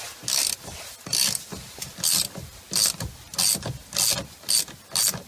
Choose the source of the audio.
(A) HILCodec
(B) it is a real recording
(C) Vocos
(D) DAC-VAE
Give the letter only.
B